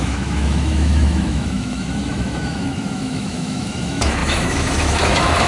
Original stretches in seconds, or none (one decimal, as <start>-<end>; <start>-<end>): none